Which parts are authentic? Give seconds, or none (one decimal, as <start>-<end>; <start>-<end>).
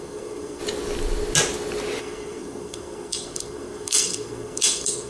0.6-2.0